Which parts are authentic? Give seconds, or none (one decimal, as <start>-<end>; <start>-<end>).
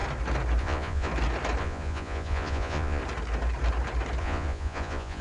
0.0-0.6; 1.1-1.6; 3.0-4.2